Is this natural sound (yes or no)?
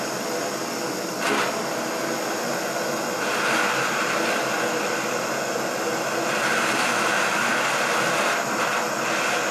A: no